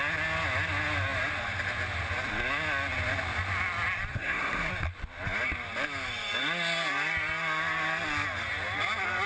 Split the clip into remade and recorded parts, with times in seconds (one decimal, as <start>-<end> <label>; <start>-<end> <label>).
0.0-4.1 recorded; 4.1-4.7 remade; 4.7-9.3 recorded